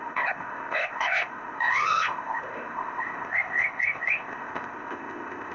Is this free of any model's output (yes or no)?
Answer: no